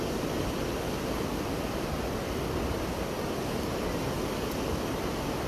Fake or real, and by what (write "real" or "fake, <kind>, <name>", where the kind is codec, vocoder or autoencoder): real